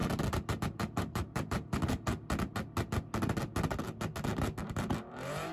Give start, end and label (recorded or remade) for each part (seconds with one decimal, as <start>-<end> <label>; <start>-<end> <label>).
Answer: 0.0-0.6 recorded; 0.6-1.8 remade; 1.8-5.1 recorded; 5.1-5.5 remade